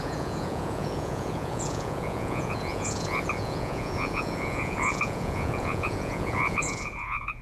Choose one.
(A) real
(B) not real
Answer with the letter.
B